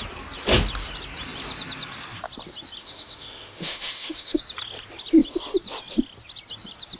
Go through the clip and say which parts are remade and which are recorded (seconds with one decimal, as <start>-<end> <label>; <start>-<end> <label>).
0.0-2.8 recorded; 2.8-4.4 remade; 4.4-7.0 recorded